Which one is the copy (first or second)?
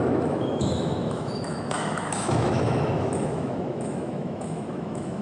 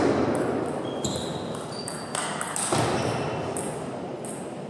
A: first